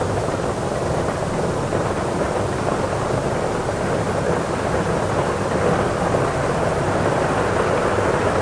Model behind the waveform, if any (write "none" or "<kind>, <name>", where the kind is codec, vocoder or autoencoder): none